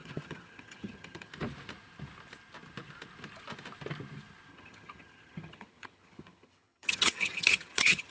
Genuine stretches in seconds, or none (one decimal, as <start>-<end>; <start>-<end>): 1.3-4.5